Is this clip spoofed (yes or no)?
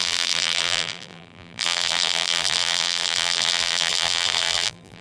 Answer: yes